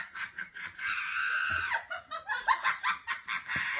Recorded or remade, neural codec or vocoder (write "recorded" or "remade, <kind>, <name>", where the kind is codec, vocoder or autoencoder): remade, vocoder, BigVGAN v2